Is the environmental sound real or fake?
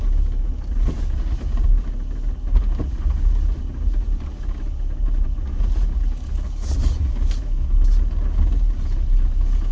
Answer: real